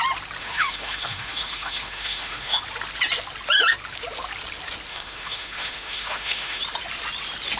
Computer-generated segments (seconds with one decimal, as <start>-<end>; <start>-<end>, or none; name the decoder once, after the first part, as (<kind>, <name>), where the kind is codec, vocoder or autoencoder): 0.4-2.6 (autoencoder, DAC-VAE); 4.9-6.6